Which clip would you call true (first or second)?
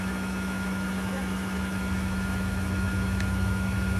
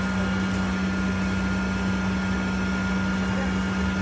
second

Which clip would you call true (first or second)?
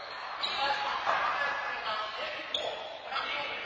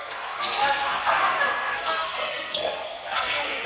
first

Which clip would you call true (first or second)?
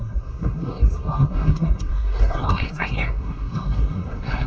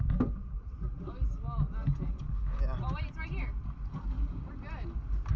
second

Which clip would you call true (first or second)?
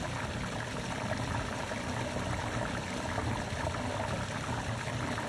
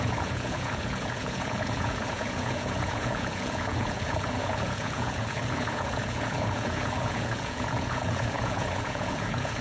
first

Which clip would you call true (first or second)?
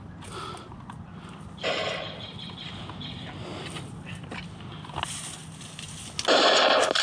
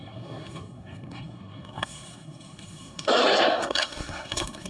first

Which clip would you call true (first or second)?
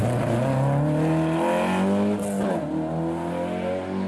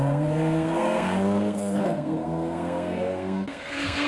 first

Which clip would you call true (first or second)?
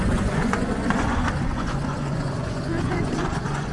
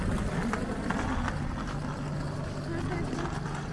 second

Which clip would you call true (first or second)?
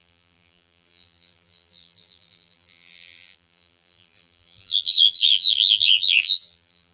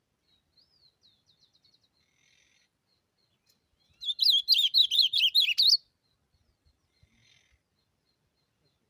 second